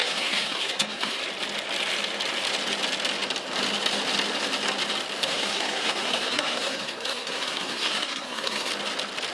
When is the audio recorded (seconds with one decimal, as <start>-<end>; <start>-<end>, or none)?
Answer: 1.2-5.2; 8.7-9.3